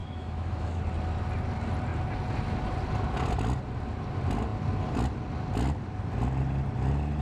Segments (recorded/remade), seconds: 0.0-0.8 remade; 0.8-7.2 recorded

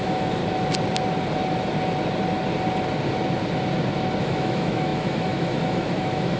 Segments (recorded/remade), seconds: 0.0-0.4 remade; 0.4-4.2 recorded; 4.2-6.4 remade

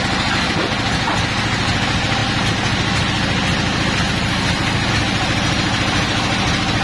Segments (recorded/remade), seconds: 0.0-6.8 recorded